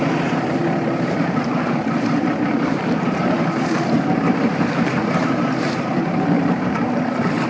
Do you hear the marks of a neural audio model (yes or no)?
yes